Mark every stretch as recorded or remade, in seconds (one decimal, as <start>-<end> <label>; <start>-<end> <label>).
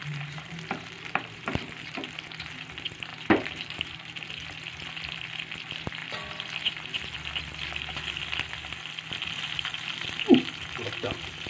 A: 0.0-2.1 remade; 2.1-3.1 recorded; 3.1-4.3 remade; 4.3-11.5 recorded